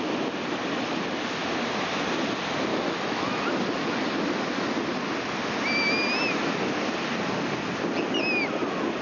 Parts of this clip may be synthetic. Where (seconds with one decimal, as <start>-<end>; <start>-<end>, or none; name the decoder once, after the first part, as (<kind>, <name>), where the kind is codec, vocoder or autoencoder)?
2.7-3.4 (autoencoder, DAC-VAE)